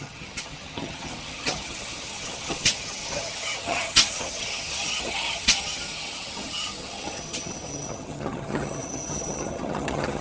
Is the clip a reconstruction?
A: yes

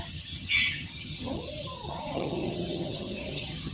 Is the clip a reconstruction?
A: yes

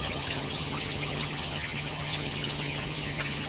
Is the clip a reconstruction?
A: yes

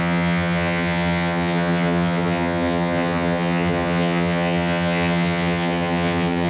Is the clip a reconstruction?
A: yes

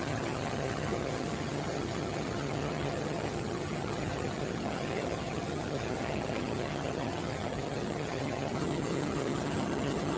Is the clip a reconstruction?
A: yes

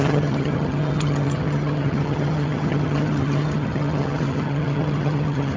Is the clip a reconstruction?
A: yes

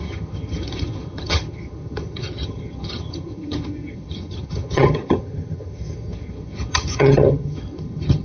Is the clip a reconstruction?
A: yes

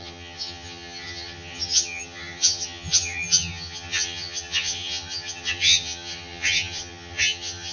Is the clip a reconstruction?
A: yes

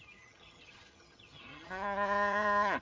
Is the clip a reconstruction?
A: yes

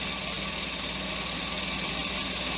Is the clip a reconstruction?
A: no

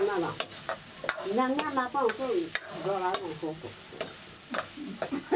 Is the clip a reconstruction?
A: no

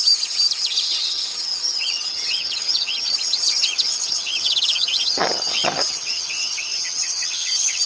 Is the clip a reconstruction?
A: yes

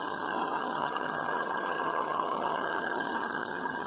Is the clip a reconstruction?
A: yes